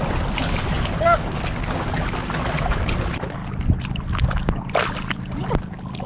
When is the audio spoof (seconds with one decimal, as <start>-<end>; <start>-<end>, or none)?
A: none